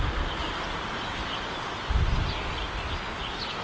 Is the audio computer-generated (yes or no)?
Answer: no